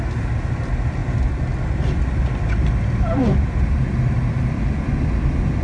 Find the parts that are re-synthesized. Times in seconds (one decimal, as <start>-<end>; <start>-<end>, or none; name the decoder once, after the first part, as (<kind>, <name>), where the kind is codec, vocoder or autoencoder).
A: none